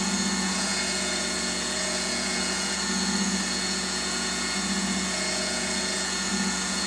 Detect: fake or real fake